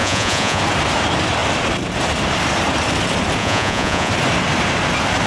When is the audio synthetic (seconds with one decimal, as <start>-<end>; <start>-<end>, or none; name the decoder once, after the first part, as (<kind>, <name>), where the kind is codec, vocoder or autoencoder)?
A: 0.0-0.6 (vocoder, Vocos); 3.4-4.1